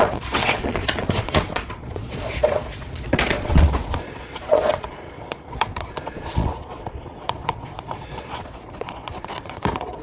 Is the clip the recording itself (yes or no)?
no